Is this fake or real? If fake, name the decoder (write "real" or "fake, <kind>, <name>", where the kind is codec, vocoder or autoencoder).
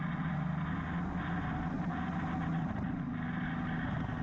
real